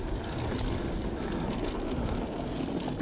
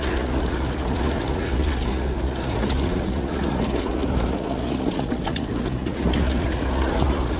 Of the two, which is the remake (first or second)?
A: second